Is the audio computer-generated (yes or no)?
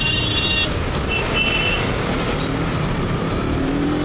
yes